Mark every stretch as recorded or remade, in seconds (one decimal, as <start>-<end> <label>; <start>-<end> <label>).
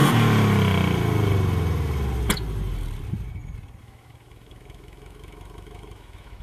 0.0-3.8 recorded; 3.8-6.4 remade